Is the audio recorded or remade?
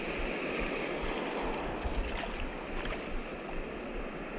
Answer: recorded